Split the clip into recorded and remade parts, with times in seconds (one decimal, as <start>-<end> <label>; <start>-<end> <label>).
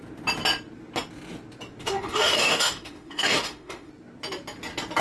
0.0-1.8 recorded; 1.8-3.9 remade; 3.9-5.0 recorded